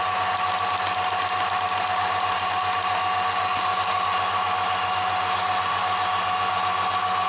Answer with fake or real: real